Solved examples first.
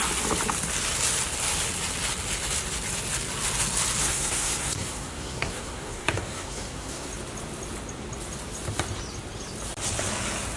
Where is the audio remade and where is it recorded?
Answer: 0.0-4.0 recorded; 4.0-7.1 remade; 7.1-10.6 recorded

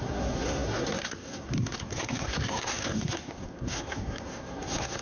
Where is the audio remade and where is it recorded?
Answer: 0.0-5.0 remade

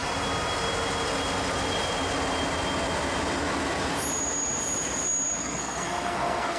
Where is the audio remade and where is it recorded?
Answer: 0.0-5.4 recorded; 5.4-6.6 remade

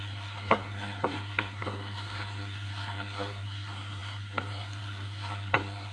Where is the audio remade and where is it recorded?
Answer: 0.0-5.9 remade